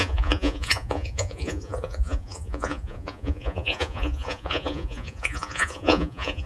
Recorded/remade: remade